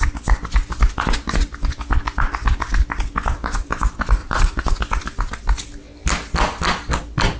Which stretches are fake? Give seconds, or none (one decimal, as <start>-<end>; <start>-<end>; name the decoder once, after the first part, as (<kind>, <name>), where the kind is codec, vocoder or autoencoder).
4.2-4.8 (vocoder, Vocos)